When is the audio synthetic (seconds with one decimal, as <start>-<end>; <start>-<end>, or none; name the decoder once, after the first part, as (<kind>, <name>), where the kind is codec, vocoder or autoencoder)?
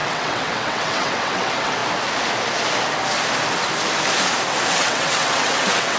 0.0-1.8 (vocoder, WaveNeXt); 4.7-6.0